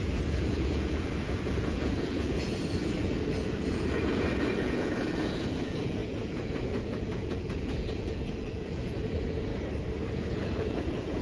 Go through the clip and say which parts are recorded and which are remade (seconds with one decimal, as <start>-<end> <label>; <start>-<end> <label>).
0.0-9.5 remade; 9.5-10.1 recorded; 10.1-11.2 remade